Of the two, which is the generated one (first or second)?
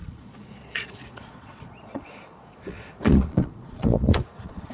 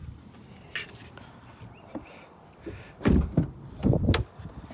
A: first